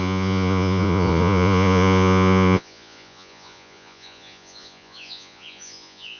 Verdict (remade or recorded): remade